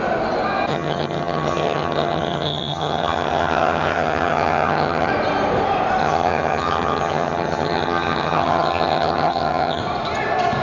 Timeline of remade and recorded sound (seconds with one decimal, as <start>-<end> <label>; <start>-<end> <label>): 0.0-0.7 recorded; 0.7-5.1 remade; 5.1-6.0 recorded; 6.0-9.8 remade; 9.8-10.6 recorded